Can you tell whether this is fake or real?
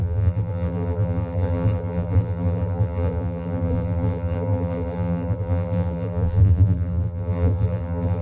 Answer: fake